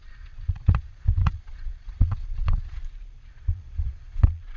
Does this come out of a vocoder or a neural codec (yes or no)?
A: yes